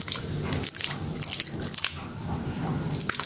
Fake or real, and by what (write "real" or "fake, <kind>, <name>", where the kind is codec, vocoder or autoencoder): real